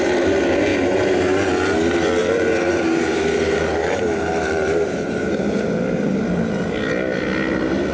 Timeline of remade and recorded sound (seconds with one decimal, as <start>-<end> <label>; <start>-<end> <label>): 0.0-0.7 recorded; 0.7-1.5 remade; 1.5-2.2 recorded; 2.2-5.6 remade; 5.6-7.9 recorded